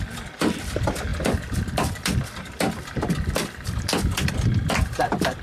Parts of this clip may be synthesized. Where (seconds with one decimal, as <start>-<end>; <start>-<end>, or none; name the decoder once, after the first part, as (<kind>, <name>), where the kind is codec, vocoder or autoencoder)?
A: 0.0-5.4 (vocoder, BigVGAN v2)